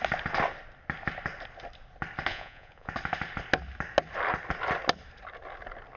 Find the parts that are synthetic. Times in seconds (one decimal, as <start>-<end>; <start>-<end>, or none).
2.3-2.9